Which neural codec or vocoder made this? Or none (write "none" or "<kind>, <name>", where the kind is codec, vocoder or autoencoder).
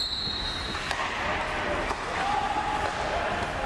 none